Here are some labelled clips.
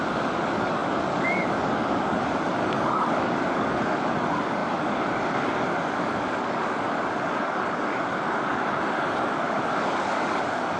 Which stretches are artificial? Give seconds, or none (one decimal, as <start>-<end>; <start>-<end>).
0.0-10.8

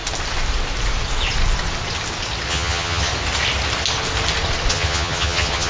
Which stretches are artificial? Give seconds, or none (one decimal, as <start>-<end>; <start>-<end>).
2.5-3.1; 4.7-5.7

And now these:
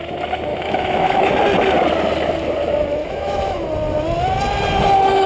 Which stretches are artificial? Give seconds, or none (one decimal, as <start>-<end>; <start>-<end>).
0.5-1.3; 3.0-3.7

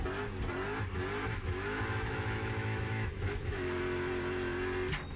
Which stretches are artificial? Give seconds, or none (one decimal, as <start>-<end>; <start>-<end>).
1.2-3.8

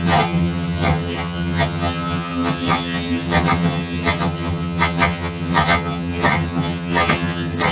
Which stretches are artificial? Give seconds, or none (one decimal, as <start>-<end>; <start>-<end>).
0.0-7.7

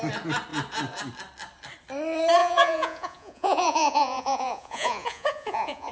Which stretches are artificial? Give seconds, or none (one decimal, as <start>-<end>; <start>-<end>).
2.4-5.9